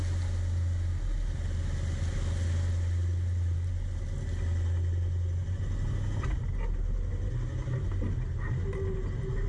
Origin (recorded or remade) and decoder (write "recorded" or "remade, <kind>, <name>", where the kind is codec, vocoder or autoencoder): recorded